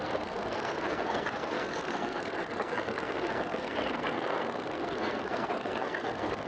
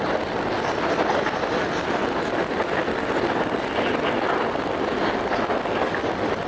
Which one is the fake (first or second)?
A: first